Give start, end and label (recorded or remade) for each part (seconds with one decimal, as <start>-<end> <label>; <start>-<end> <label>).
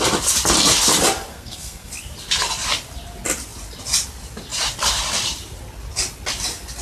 0.0-1.3 recorded; 1.3-1.9 remade; 1.9-6.8 recorded